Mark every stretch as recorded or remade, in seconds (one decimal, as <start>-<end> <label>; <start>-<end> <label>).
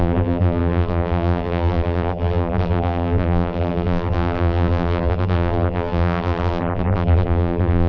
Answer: 0.0-7.9 remade